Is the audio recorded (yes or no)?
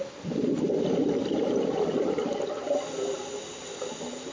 yes